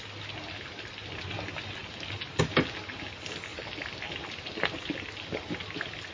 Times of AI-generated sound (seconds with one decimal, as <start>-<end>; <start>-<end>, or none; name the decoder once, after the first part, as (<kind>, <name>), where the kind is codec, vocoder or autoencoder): none